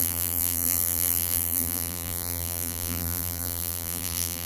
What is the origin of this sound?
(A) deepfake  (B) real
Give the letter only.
A